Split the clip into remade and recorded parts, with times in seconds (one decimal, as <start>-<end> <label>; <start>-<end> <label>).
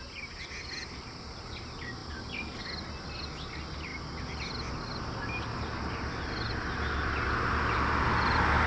0.0-8.7 recorded